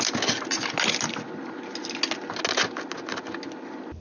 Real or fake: real